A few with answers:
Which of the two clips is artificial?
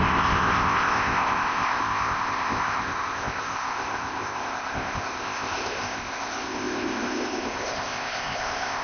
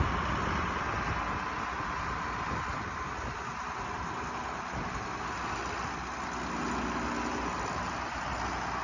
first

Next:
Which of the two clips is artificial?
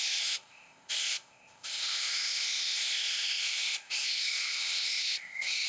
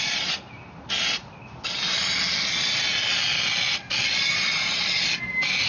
first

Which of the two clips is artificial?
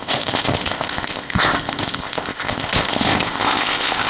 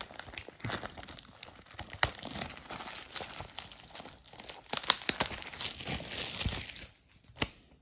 first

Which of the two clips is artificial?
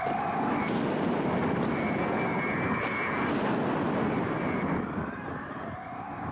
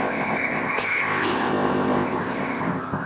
second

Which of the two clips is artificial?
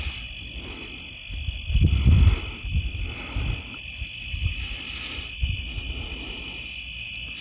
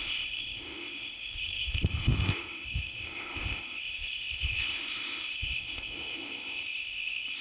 second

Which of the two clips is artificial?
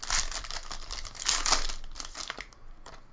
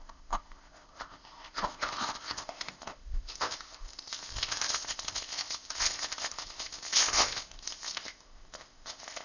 second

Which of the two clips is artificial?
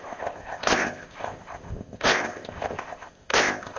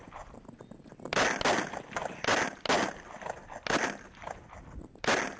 first